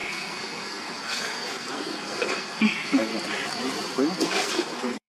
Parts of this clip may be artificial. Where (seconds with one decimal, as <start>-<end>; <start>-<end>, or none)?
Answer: 0.0-3.1; 4.2-5.1